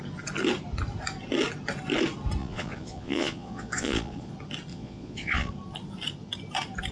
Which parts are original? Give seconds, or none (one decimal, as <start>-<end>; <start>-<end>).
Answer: 0.0-2.4; 4.3-4.7; 5.5-6.9